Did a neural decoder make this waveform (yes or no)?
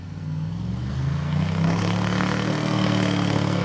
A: yes